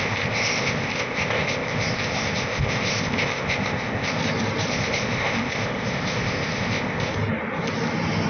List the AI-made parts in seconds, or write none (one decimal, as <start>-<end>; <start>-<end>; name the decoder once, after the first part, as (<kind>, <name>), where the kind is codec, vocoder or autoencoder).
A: 0.0-4.2 (codec, ZipCodec); 4.7-7.1